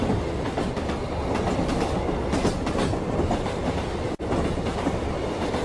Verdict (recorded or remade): recorded